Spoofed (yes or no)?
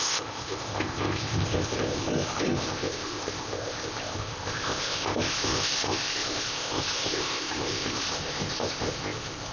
yes